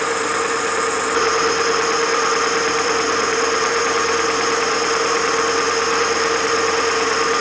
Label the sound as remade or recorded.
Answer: remade